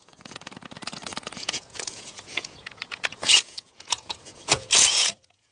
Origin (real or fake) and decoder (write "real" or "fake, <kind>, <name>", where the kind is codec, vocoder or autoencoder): fake, vocoder, Vocos